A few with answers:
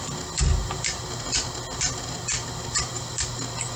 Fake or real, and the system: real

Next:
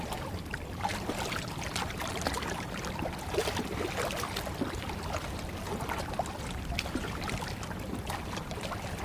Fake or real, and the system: fake, vocoder, BigVGAN v2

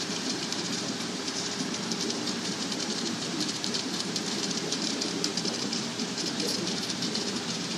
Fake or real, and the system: fake, vocoder, BigVGAN v2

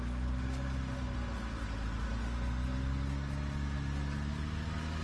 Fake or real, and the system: real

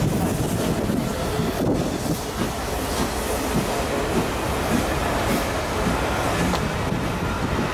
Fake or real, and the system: real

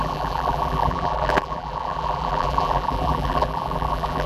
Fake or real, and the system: fake, vocoder, BigVGAN v2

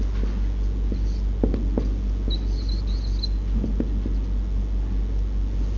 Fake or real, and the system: real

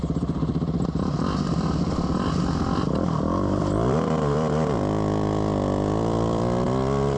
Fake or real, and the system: fake, vocoder, BigVGAN v2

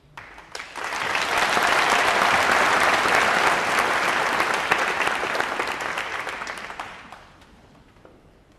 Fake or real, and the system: fake, vocoder, BigVGAN v2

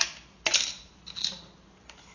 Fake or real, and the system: fake, vocoder, BigVGAN v2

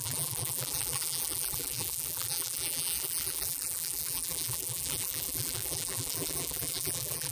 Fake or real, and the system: fake, vocoder, BigVGAN v2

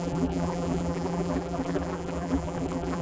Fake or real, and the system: fake, vocoder, BigVGAN v2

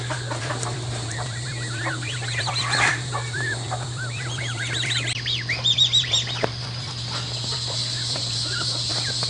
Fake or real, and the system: fake, vocoder, BigVGAN v2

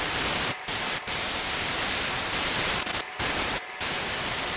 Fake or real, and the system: fake, vocoder, BigVGAN v2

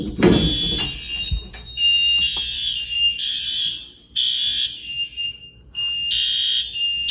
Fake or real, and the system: fake, vocoder, BigVGAN v2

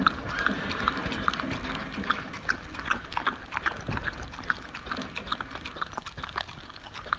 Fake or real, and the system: real